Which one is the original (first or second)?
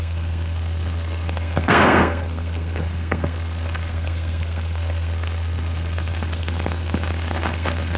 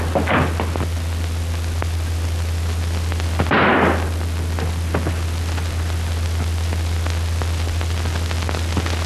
second